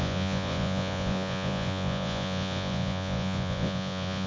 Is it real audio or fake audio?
fake